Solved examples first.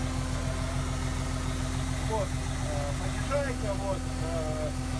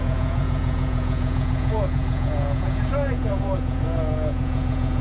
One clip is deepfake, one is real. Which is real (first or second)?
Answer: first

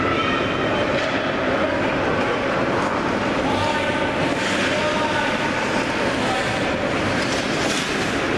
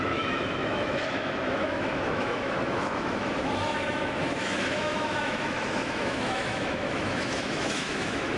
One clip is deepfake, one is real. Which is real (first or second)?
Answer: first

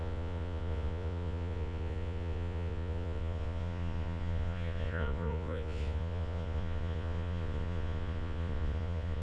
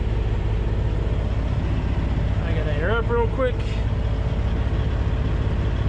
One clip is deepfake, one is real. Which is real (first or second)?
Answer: second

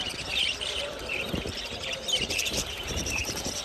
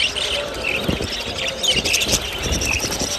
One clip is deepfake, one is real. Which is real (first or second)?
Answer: second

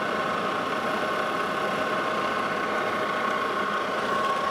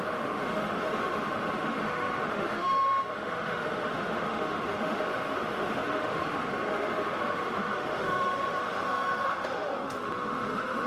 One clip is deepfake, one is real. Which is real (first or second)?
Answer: first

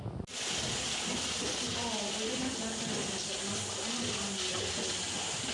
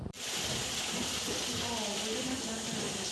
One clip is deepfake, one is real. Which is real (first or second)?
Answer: first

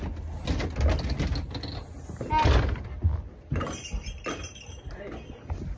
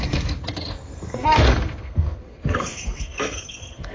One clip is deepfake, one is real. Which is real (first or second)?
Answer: first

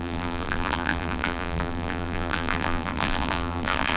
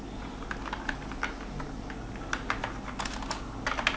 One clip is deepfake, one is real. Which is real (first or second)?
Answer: second